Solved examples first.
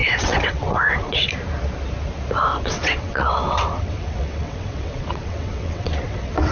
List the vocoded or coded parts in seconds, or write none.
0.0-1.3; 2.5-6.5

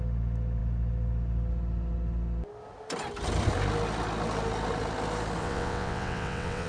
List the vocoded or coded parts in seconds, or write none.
5.4-6.7

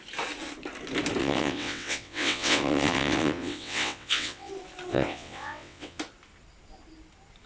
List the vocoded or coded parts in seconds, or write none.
1.2-4.5; 4.9-6.0

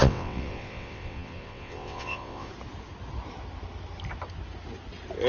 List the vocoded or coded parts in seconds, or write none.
0.0-2.5

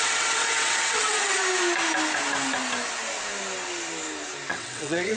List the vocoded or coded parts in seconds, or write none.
0.0-1.4; 4.5-5.2

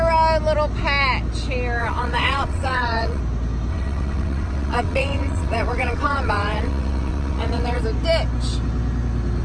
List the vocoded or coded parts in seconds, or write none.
1.8-3.2; 3.7-7.8

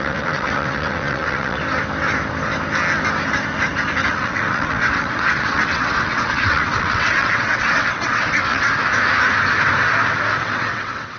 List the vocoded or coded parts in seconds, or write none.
0.0-1.6; 4.1-8.7; 10.4-11.2

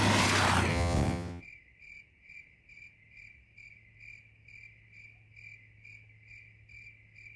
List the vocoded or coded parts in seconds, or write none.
0.7-1.4